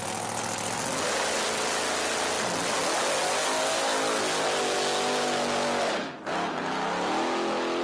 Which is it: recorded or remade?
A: recorded